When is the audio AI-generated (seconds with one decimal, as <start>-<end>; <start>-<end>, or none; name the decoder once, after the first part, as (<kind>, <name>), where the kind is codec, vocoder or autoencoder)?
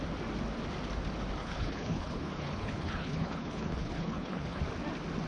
1.4-4.6 (codec, HILCodec)